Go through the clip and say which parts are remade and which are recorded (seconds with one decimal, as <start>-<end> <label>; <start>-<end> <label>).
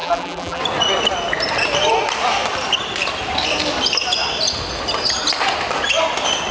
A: 0.0-0.6 remade; 0.6-6.5 recorded